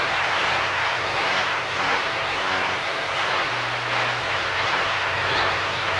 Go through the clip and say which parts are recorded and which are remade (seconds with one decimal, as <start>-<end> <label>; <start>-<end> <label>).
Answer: 0.0-3.5 remade; 3.5-4.2 recorded; 4.2-6.0 remade